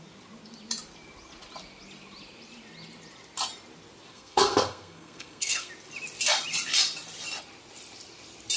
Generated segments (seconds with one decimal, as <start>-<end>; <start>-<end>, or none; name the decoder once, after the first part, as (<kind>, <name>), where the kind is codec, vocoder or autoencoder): 4.1-5.7 (codec, SNAC)